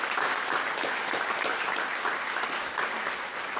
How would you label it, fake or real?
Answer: real